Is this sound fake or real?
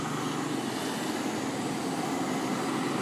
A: real